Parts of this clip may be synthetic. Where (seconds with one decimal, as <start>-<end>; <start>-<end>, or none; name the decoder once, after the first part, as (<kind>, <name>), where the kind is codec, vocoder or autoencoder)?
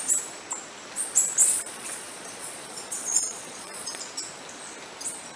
1.4-4.0 (vocoder, Vocos)